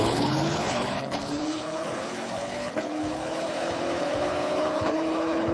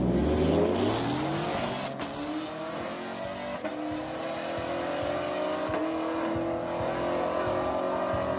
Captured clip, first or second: second